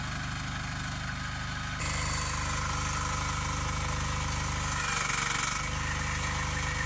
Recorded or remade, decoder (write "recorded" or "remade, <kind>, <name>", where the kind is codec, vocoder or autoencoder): recorded